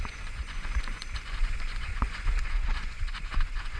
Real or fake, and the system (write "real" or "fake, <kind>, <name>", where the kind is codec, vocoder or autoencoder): fake, vocoder, Vocos